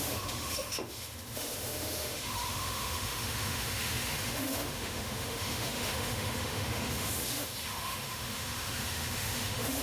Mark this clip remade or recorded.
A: remade